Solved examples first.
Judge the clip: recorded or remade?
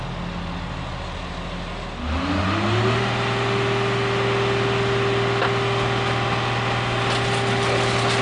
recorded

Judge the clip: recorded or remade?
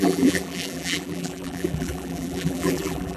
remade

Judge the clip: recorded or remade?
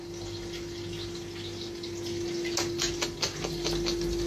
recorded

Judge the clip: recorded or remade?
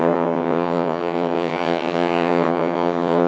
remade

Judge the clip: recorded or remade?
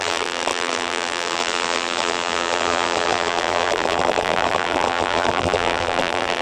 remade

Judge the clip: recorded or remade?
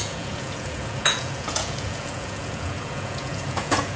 remade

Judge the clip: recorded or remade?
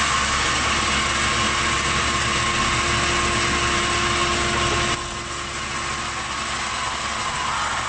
recorded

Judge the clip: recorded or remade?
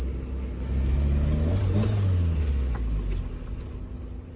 recorded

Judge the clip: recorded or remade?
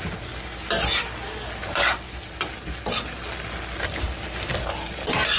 recorded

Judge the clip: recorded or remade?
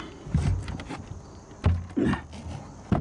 recorded